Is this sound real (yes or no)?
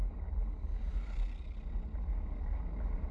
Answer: yes